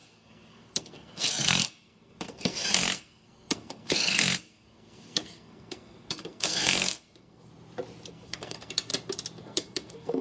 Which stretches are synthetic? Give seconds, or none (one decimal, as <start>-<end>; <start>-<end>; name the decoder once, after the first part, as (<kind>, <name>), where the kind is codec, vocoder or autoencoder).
0.0-7.5 (codec, SNAC); 8.1-8.9; 9.4-10.2